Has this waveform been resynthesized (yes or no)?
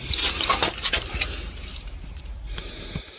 yes